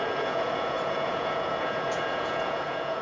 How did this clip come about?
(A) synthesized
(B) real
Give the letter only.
A